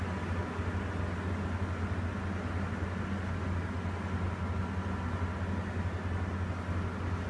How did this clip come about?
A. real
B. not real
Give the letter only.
A